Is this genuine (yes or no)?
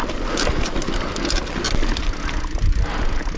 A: yes